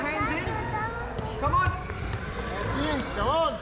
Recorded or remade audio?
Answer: recorded